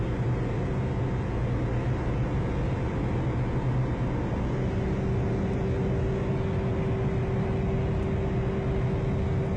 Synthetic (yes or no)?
no